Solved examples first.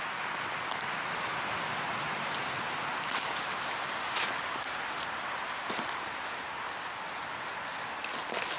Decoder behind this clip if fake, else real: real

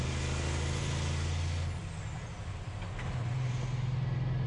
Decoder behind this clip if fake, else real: real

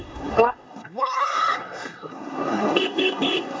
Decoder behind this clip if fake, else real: fake, codec, SNAC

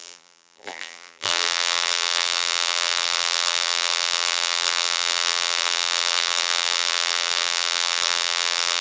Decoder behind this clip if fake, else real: fake, vocoder, BigVGAN v2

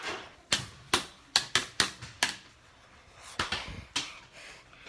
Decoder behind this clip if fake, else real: real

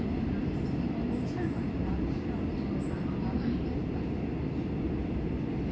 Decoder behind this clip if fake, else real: real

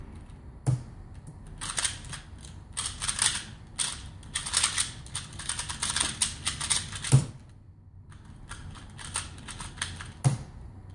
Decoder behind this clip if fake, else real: real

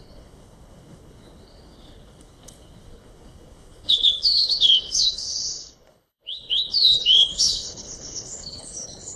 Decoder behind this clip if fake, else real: fake, codec, HILCodec